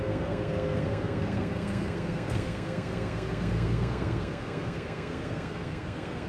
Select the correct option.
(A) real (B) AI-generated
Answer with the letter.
B